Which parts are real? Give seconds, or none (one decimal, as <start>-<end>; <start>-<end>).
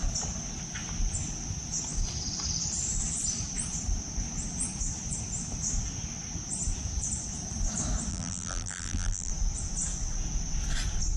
0.0-8.1; 9.3-11.2